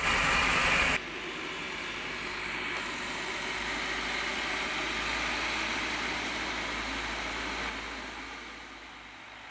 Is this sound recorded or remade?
recorded